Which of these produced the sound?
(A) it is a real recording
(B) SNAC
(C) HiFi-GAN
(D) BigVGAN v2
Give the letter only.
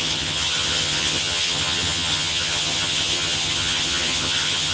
C